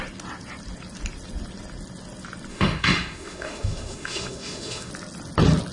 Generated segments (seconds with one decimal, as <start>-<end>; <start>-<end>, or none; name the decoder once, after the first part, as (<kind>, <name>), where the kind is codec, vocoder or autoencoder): 2.5-4.9 (autoencoder, DAC-VAE)